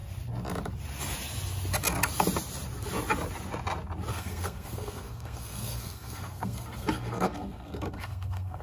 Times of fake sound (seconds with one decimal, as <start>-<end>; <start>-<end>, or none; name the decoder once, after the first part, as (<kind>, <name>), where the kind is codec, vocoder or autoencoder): 4.1-8.6 (codec, SNAC)